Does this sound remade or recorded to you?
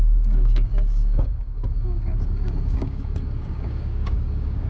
remade